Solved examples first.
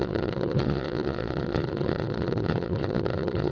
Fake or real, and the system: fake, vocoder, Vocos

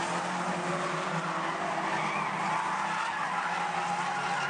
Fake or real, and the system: real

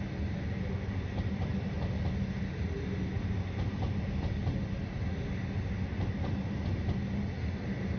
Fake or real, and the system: real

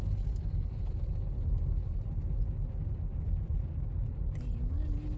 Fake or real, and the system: real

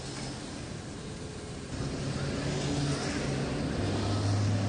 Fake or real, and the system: real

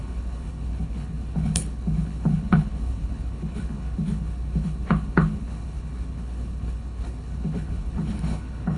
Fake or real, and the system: fake, codec, HILCodec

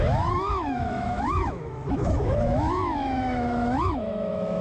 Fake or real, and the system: fake, autoencoder, DAC-VAE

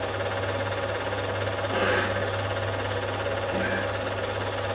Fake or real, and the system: real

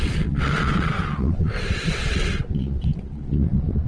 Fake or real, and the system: fake, vocoder, WaveNeXt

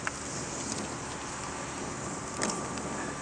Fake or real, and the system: real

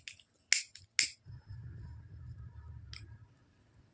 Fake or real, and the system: real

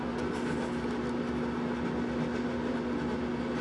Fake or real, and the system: real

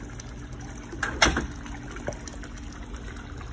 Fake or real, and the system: real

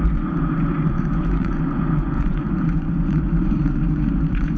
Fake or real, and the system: fake, vocoder, Vocos